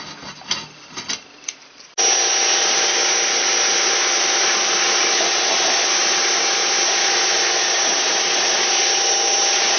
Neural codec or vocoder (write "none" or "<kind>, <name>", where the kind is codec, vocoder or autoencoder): none